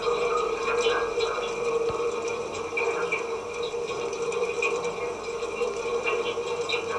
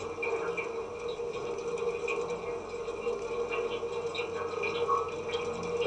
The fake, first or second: first